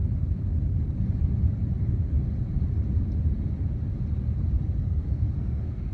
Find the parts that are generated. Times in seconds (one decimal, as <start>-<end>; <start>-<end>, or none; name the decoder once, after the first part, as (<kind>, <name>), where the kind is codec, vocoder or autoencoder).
4.8-5.9 (codec, SNAC)